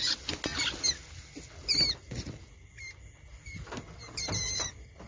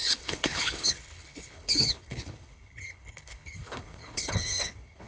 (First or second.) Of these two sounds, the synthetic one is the second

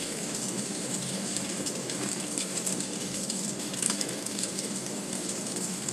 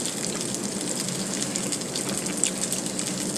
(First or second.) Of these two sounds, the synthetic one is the first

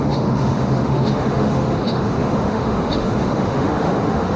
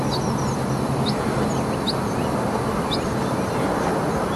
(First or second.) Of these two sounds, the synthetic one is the first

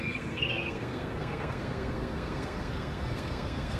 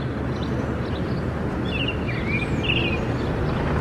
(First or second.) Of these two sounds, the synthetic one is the first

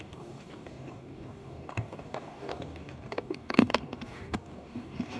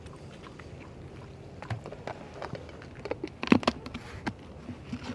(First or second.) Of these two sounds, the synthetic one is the first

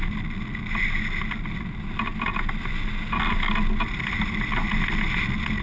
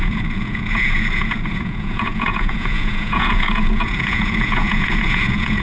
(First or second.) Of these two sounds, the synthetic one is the second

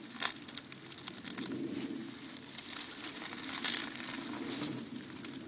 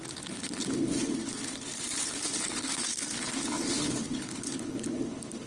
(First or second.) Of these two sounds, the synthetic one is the second